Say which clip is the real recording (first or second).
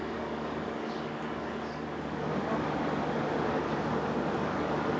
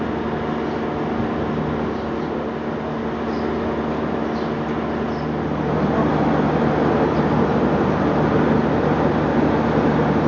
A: second